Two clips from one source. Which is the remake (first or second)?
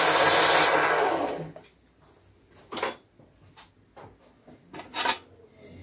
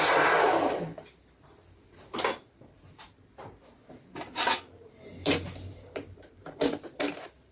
second